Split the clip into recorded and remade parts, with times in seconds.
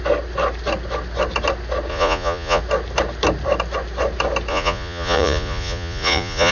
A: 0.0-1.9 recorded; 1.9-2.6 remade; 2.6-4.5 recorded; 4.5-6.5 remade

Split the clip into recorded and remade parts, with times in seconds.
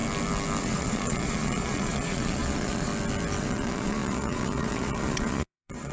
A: 0.0-0.6 recorded; 0.6-2.9 remade; 2.9-3.4 recorded; 3.4-5.9 remade